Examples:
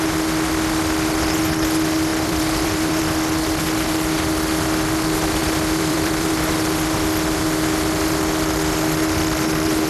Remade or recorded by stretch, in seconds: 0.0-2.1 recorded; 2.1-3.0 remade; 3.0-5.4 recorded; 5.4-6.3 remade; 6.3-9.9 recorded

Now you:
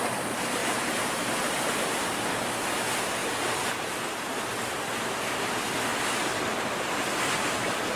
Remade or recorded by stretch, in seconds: 0.0-0.6 recorded; 0.6-1.8 remade; 1.8-3.2 recorded; 3.2-4.4 remade; 4.4-8.0 recorded

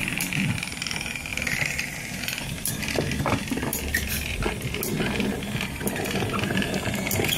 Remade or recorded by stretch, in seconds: 0.0-1.3 recorded; 1.3-2.7 remade; 2.7-3.7 recorded; 3.7-4.3 remade; 4.3-7.4 recorded